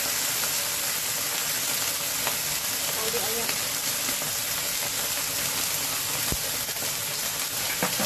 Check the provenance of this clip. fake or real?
real